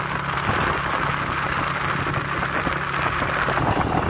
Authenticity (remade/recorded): recorded